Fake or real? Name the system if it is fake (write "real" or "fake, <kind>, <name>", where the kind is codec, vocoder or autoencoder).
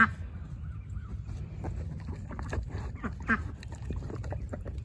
real